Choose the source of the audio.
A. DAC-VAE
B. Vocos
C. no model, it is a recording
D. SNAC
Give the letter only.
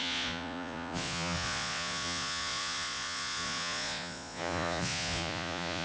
B